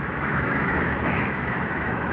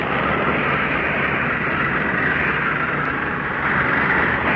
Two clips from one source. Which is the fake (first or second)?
first